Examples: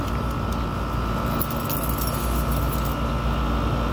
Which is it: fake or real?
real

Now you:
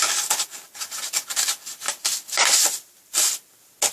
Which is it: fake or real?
real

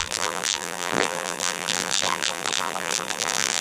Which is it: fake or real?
fake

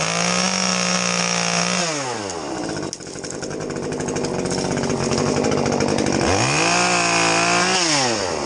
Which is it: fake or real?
real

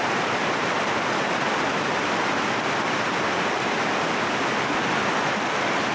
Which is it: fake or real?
real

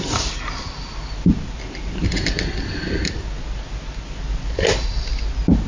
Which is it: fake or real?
real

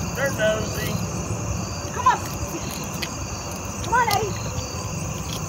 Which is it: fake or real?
real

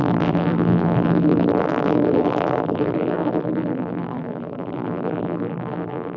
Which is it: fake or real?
fake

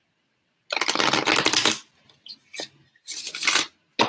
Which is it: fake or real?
real